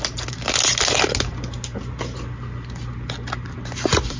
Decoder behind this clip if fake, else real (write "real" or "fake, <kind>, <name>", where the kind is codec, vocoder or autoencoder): real